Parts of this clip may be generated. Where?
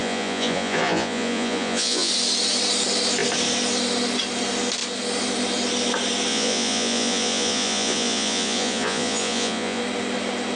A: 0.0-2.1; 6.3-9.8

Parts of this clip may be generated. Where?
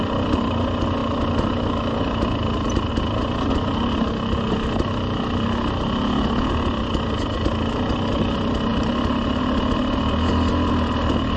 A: none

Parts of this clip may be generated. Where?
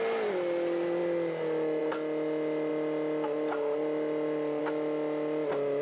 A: none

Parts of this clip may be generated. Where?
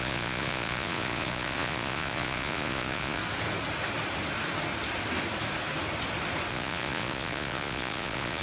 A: 0.0-3.2; 6.5-8.4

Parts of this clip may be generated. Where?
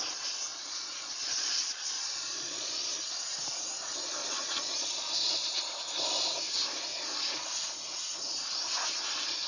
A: 0.5-2.9; 4.2-5.3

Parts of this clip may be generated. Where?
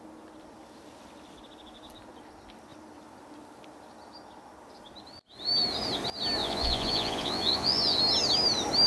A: 6.4-8.0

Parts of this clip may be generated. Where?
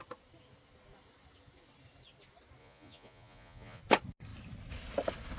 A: 2.6-3.8